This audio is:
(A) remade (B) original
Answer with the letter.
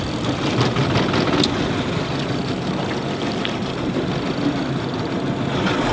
B